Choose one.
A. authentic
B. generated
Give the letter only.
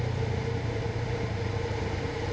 B